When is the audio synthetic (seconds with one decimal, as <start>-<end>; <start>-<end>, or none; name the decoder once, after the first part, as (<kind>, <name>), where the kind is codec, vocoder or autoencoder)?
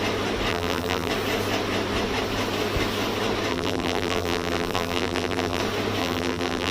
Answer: 0.5-1.1 (vocoder, BigVGAN v2); 3.5-5.6; 6.0-6.7